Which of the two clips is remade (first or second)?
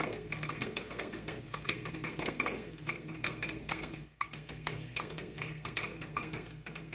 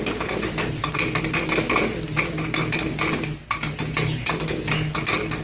first